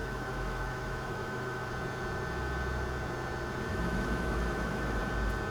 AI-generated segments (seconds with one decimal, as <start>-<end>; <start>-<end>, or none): 0.0-1.7; 3.7-5.0